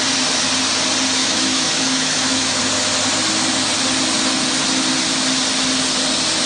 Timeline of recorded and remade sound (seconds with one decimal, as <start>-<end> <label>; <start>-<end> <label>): 0.0-1.2 recorded; 1.2-2.6 remade; 2.6-6.5 recorded